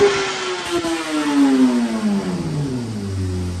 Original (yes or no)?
yes